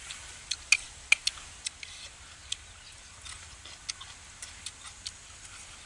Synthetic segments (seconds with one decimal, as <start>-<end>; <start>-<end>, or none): none